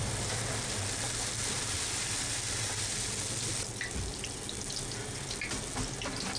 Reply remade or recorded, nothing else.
recorded